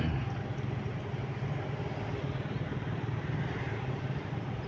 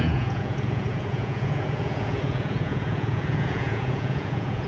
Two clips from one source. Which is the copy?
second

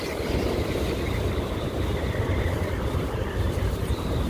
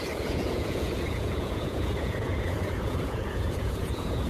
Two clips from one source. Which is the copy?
second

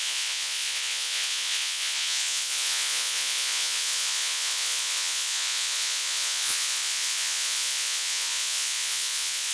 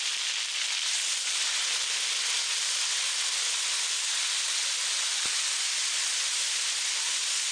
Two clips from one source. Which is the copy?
first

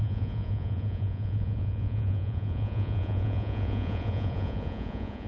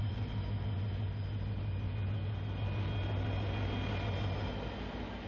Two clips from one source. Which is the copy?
first